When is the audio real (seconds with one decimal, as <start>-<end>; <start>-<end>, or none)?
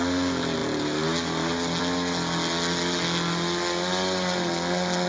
0.0-5.1